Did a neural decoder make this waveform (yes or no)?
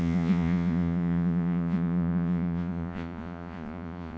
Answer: yes